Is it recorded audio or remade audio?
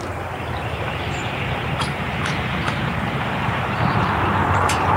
remade